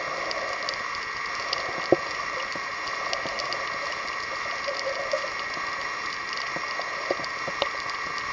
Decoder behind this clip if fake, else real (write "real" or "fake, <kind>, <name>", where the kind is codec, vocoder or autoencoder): real